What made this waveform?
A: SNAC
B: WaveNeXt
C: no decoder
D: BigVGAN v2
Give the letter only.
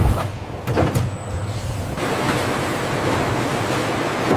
C